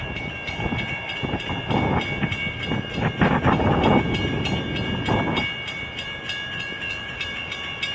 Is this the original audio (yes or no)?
yes